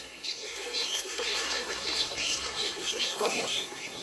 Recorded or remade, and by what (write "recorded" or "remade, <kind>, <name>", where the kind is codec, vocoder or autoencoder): remade, codec, SNAC